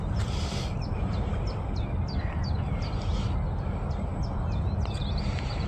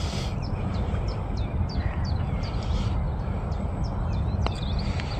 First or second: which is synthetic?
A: second